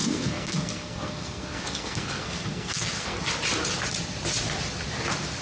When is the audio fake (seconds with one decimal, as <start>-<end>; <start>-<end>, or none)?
0.0-3.2